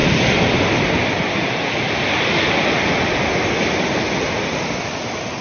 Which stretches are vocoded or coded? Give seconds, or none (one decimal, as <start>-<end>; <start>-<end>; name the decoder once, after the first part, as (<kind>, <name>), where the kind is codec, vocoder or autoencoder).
none